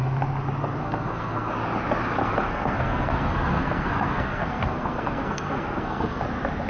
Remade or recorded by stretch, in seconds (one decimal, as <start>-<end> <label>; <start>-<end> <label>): 0.0-0.8 recorded; 0.8-1.5 remade; 1.5-2.2 recorded; 2.2-6.2 remade; 6.2-6.7 recorded